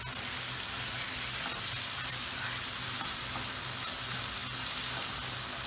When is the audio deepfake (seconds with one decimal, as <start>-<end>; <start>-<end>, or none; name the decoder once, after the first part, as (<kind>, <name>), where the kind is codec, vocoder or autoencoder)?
none

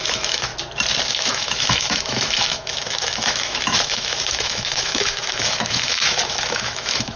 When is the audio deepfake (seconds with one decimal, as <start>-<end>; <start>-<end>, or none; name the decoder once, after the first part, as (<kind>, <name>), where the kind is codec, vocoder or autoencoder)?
0.0-0.5 (autoencoder, DAC-VAE); 1.1-7.2

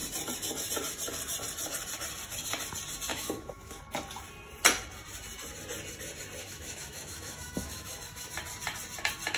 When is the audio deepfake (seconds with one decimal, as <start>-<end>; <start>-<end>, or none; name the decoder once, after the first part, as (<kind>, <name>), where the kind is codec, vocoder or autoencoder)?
3.1-3.8 (autoencoder, DAC-VAE); 6.4-8.3

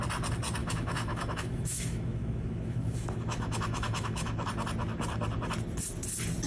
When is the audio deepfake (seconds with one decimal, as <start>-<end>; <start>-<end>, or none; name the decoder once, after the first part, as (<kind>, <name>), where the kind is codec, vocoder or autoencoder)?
0.6-4.5 (autoencoder, DAC-VAE)

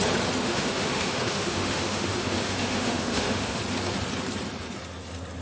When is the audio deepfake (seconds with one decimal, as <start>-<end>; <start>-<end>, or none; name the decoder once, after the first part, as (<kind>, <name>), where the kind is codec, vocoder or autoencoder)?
0.4-3.6 (autoencoder, DAC-VAE)

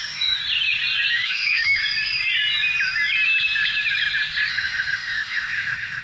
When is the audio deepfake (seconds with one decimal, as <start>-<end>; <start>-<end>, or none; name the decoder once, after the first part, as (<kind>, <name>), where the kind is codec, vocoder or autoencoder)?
0.0-0.4 (autoencoder, DAC-VAE); 1.1-1.8; 4.5-6.0

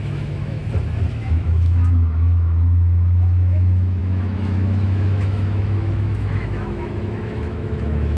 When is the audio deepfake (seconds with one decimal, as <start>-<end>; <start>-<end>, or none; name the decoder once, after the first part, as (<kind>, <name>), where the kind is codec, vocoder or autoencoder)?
0.0-0.6 (autoencoder, DAC-VAE); 1.1-8.2